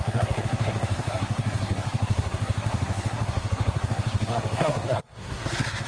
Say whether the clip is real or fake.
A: fake